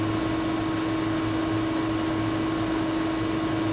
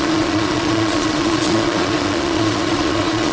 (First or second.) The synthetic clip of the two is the second